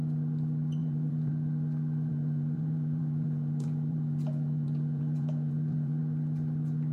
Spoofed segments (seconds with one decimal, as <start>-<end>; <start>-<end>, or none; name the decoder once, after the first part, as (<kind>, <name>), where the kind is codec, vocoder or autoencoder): 0.8-1.3 (vocoder, Vocos); 2.1-6.0